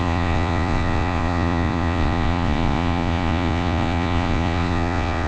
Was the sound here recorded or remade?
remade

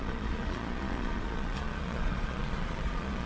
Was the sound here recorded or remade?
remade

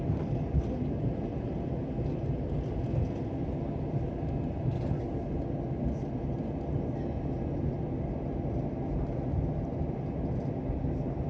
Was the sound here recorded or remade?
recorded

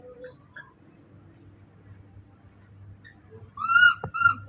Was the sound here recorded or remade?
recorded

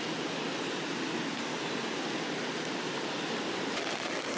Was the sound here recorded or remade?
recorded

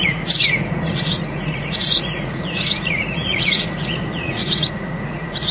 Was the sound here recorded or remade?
remade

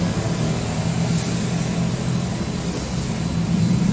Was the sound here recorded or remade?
recorded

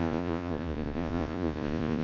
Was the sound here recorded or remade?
remade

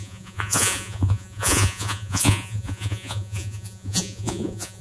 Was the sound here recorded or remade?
remade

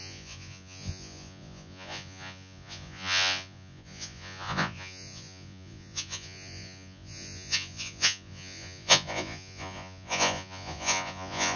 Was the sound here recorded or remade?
remade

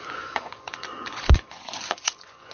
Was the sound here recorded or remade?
remade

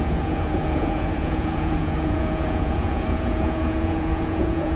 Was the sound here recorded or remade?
remade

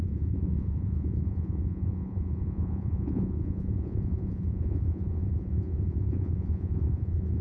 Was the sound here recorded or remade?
remade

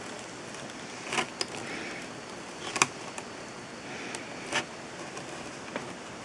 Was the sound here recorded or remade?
recorded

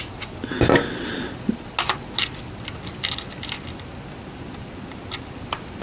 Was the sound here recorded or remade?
recorded